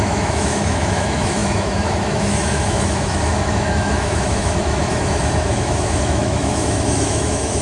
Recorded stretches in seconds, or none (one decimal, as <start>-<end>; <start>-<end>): none